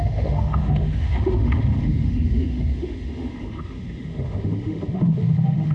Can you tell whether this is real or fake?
fake